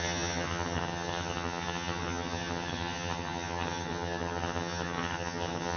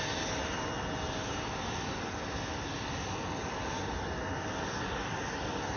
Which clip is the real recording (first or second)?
second